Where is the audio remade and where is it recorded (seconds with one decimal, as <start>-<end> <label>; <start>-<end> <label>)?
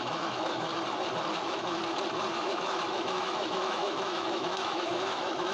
0.0-0.7 remade; 0.7-1.3 recorded; 1.3-1.8 remade; 1.8-2.3 recorded; 2.3-5.5 remade